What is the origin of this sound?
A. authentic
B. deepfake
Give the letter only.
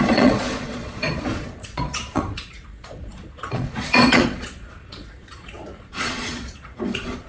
B